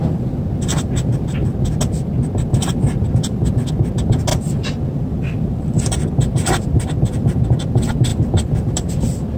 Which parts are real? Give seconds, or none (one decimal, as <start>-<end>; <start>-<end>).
0.0-2.5; 3.7-4.3; 7.5-8.1; 8.9-9.4